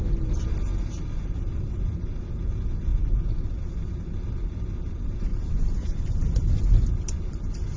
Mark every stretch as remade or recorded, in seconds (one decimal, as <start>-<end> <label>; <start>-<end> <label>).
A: 0.0-7.8 recorded